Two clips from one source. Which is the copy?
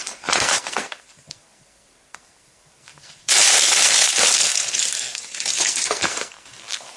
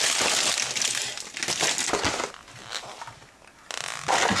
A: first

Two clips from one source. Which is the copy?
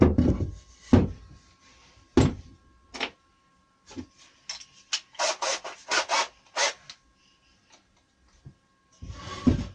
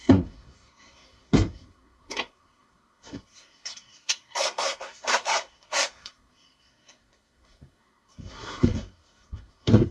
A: second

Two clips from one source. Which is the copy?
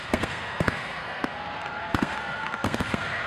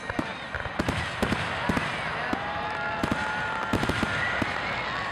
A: first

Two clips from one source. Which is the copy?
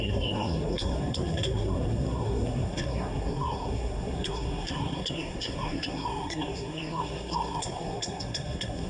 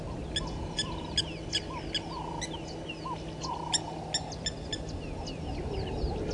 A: first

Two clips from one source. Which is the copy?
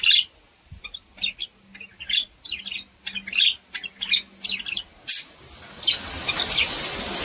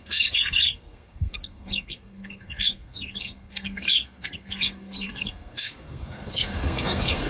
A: second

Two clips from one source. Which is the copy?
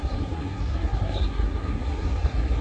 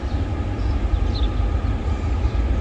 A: first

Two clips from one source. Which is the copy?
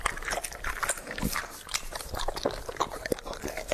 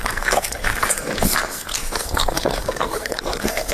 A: second